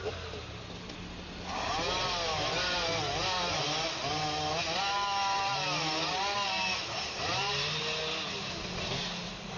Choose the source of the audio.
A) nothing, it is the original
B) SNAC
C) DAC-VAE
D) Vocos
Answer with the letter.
A